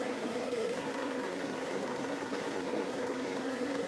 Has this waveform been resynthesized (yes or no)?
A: yes